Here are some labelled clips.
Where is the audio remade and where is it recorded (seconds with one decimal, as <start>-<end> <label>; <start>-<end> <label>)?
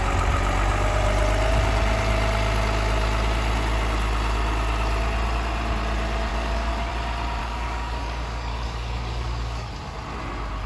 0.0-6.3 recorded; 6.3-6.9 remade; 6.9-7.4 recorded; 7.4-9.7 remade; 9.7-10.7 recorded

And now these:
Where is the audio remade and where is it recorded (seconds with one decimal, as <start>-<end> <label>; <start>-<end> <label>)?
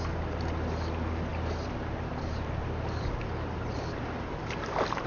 0.0-5.1 recorded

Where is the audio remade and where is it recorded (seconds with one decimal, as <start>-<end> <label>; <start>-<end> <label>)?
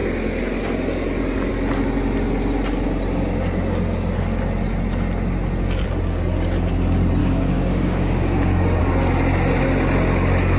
0.0-7.2 recorded; 7.2-8.8 remade; 8.8-10.6 recorded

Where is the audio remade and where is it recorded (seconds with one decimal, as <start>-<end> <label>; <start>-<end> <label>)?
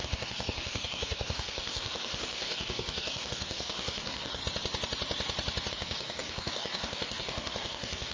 0.0-4.4 remade; 4.4-5.7 recorded; 5.7-8.1 remade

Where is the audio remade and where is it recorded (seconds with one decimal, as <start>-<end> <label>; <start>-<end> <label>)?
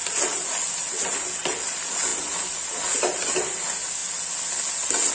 0.0-5.1 recorded